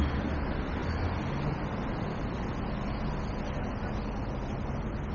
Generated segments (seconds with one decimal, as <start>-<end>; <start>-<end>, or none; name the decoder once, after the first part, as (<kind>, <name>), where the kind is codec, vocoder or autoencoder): none